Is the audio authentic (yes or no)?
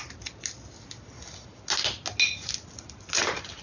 yes